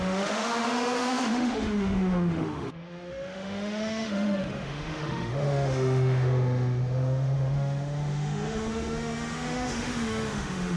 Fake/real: fake